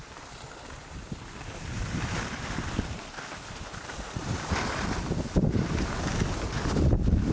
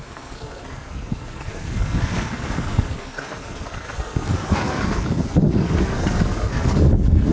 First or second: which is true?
first